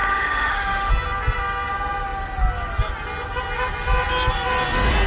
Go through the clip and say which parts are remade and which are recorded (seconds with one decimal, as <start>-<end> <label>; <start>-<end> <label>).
0.0-0.9 remade; 0.9-5.1 recorded